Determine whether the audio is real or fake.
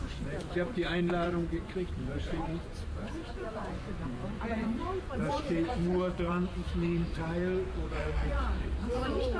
fake